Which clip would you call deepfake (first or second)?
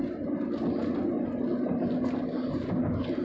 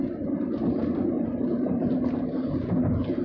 second